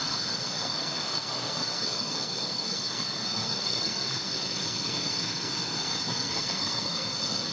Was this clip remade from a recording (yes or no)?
yes